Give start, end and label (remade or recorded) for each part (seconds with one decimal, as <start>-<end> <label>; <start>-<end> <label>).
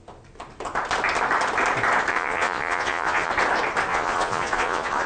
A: 0.0-2.1 recorded; 2.1-3.3 remade; 3.3-3.9 recorded; 3.9-5.1 remade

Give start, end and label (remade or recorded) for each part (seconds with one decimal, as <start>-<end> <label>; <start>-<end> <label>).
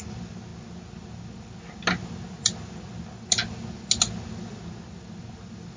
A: 0.0-5.8 recorded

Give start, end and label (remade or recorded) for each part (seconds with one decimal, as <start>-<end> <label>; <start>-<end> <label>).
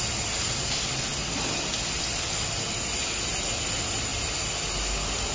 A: 0.0-5.3 recorded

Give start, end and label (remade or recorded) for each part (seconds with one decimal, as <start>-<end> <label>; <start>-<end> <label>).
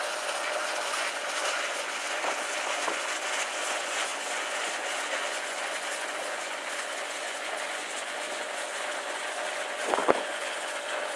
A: 0.0-11.2 remade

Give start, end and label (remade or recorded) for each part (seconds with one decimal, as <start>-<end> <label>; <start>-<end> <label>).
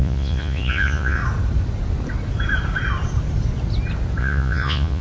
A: 0.0-1.2 remade; 1.2-4.2 recorded; 4.2-5.0 remade